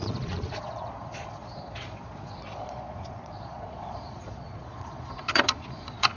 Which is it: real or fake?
fake